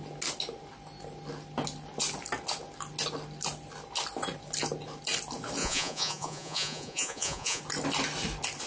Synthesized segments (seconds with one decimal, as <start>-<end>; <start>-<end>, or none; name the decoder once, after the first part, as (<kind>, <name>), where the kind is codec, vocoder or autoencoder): 5.6-7.6 (vocoder, Vocos)